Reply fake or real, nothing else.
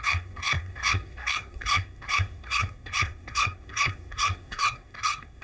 fake